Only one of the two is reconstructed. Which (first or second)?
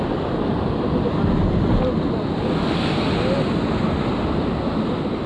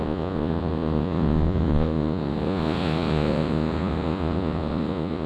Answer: second